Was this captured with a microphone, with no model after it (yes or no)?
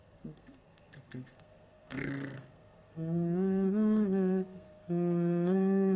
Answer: no